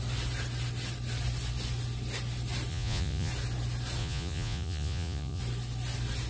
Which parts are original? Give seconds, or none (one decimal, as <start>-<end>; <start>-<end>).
0.0-2.7; 3.3-4.0; 5.4-6.3